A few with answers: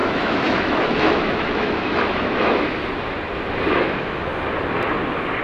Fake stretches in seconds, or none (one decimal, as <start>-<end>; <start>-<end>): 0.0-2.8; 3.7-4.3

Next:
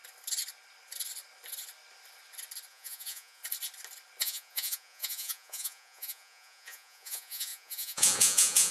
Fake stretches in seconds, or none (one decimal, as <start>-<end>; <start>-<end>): 2.7-3.4; 4.2-8.7

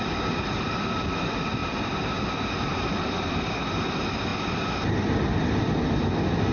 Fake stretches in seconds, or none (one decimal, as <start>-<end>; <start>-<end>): none